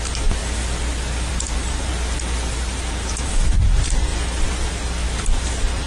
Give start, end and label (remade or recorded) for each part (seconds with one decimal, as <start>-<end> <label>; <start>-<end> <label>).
0.0-0.4 remade; 0.4-1.3 recorded; 1.3-1.9 remade; 1.9-2.5 recorded; 2.5-4.1 remade; 4.1-4.7 recorded; 4.7-5.9 remade